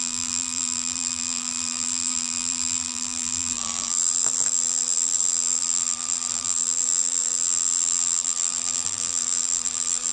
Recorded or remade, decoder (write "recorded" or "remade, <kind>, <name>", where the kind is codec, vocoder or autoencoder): remade, vocoder, BigVGAN v2